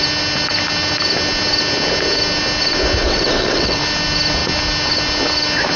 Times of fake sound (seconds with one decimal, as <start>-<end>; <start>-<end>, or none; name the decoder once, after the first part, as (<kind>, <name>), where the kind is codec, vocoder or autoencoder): 3.0-3.8 (vocoder, WaveNeXt)